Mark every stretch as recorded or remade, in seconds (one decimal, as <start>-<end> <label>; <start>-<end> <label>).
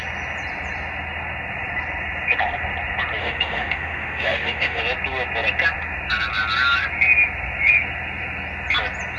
0.0-3.2 recorded; 3.2-4.8 remade; 4.8-9.2 recorded